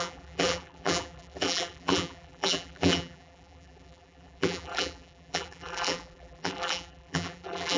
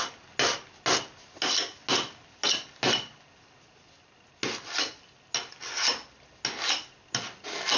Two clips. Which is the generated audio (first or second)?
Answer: first